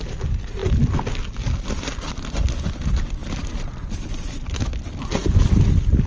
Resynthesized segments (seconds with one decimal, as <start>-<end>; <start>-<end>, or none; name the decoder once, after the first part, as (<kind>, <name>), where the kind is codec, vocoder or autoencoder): none